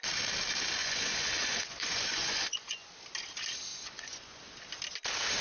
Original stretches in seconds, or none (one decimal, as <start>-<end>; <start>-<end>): 0.0-0.8; 2.9-3.7; 4.4-5.4